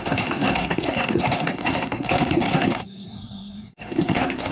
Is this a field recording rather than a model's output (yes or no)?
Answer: no